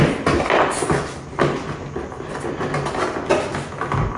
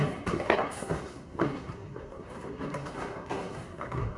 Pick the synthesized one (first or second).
second